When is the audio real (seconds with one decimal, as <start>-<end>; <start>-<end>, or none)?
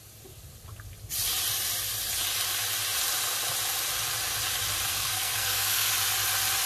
0.0-4.9; 5.9-6.7